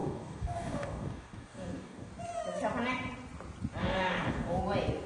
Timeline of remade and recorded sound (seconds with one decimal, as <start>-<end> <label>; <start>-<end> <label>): 0.0-2.1 remade; 2.1-3.8 recorded; 3.8-4.6 remade; 4.6-5.1 recorded